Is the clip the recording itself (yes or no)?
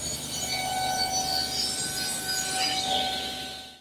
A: yes